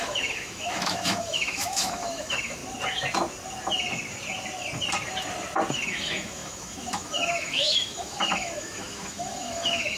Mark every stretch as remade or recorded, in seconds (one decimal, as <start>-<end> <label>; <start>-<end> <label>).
0.0-2.6 remade; 2.6-5.7 recorded; 5.7-10.0 remade